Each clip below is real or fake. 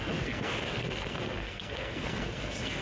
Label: fake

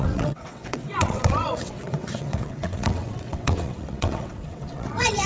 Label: fake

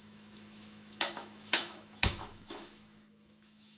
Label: fake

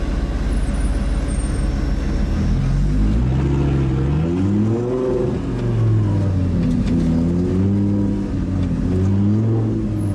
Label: real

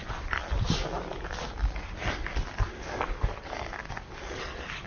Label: real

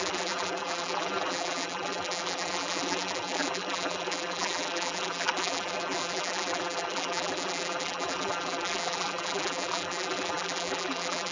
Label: fake